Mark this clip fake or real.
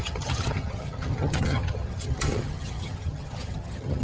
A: fake